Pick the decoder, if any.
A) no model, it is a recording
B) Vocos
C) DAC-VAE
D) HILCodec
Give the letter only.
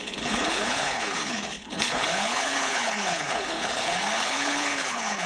D